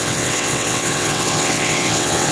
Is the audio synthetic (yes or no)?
yes